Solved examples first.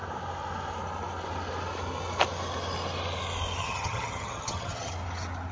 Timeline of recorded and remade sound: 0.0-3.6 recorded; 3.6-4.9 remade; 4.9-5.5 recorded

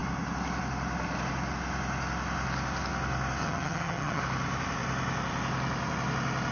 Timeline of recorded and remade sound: 0.0-3.4 recorded; 3.4-4.2 remade; 4.2-6.5 recorded

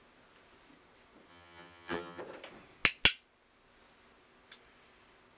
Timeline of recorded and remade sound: 0.0-1.3 recorded; 1.3-2.2 remade; 2.2-5.4 recorded

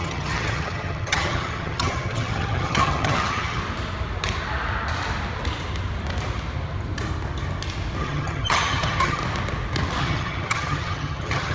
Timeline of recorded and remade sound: 0.0-3.6 remade; 3.6-8.0 recorded; 8.0-9.2 remade; 9.2-10.0 recorded; 10.0-11.5 remade